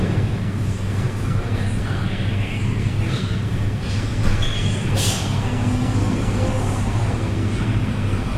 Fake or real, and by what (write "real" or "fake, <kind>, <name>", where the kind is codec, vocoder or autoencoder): fake, codec, SNAC